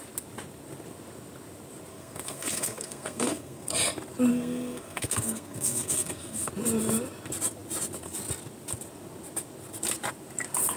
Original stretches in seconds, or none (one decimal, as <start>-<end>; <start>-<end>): 0.0-1.9; 3.7-4.3; 6.5-10.8